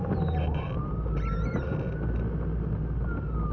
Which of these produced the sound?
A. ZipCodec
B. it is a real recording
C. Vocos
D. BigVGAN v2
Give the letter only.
B